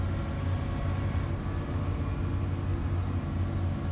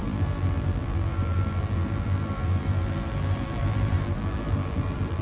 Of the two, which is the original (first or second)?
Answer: first